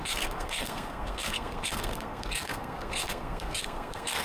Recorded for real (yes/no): no